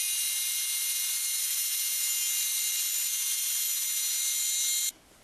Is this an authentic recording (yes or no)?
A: yes